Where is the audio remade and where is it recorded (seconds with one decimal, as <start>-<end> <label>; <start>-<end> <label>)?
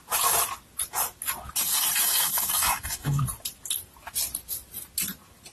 0.0-2.0 recorded; 2.0-3.2 remade; 3.2-5.5 recorded